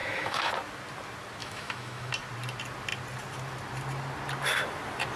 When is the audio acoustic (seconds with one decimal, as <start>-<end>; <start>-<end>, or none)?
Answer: 0.5-1.4; 2.1-5.2